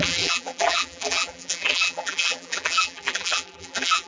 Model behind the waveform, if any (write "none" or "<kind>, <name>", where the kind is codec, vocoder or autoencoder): vocoder, BigVGAN v2